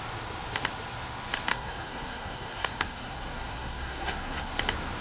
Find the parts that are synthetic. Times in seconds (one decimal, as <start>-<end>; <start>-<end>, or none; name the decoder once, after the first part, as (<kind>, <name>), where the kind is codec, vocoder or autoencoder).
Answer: 1.5-4.5 (codec, SNAC)